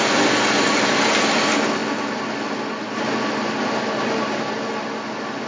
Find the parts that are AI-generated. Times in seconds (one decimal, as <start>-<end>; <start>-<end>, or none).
none